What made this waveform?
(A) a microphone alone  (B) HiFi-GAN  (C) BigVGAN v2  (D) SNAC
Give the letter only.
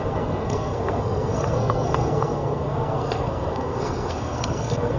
D